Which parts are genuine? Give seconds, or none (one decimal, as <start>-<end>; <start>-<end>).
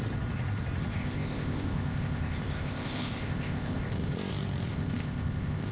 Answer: 0.0-1.0; 4.3-4.7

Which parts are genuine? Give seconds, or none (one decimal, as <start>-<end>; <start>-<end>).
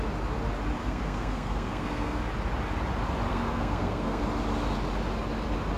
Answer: 0.0-0.8; 2.2-3.3; 4.2-5.8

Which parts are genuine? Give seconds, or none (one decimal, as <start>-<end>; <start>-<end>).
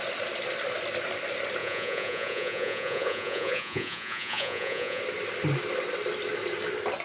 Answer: 0.0-1.6; 5.0-7.0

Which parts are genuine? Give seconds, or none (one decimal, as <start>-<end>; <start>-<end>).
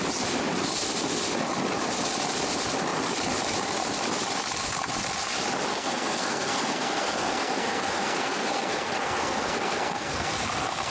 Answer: 0.0-5.7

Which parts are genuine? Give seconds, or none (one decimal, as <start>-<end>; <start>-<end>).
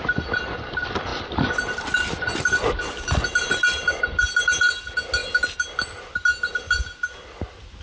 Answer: 0.0-7.8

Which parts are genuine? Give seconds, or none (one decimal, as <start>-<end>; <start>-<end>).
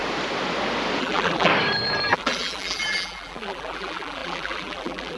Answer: 0.0-1.0; 1.5-2.1